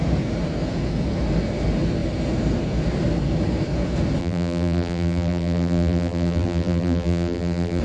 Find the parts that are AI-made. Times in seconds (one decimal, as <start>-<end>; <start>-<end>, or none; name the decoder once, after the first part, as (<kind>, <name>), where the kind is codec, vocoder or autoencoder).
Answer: 4.2-7.8 (vocoder, BigVGAN v2)